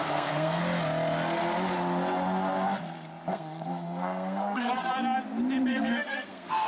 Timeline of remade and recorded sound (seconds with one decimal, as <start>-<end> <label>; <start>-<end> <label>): 0.0-0.6 remade; 0.6-3.3 recorded; 3.3-4.9 remade; 4.9-5.7 recorded; 5.7-6.7 remade